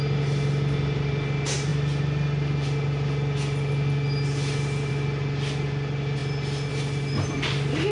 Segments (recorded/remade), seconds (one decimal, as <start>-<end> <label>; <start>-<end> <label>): 0.0-6.2 recorded; 6.2-6.7 remade; 6.7-7.9 recorded

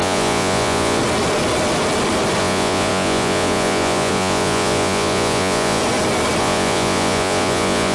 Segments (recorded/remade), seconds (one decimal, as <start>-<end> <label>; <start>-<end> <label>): 0.0-1.0 remade; 1.0-2.4 recorded; 2.4-5.8 remade; 5.8-6.4 recorded; 6.4-7.9 remade

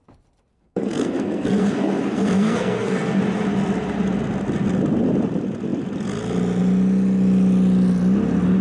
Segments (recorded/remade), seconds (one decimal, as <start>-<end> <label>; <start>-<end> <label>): 0.0-0.5 recorded; 0.5-3.2 remade; 3.2-8.6 recorded

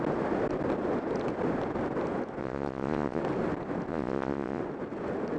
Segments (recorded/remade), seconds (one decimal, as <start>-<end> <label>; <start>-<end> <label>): 0.0-2.4 recorded; 2.4-3.2 remade; 3.2-3.9 recorded; 3.9-4.6 remade; 4.6-5.4 recorded

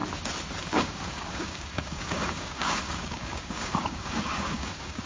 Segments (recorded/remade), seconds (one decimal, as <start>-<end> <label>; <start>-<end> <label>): 0.0-0.6 recorded; 0.6-5.1 remade

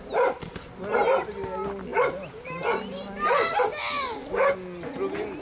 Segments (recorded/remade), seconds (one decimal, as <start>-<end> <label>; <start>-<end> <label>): 0.0-5.4 recorded

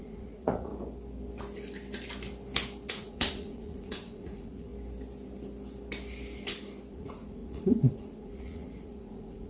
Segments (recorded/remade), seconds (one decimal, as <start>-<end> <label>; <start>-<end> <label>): 0.0-0.7 remade; 0.7-2.9 recorded; 2.9-4.7 remade; 4.7-6.9 recorded; 6.9-9.5 remade

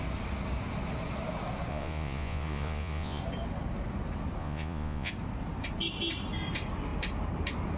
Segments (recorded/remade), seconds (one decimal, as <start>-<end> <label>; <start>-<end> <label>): 0.0-1.7 recorded; 1.7-3.2 remade; 3.2-4.4 recorded; 4.4-5.1 remade; 5.1-7.8 recorded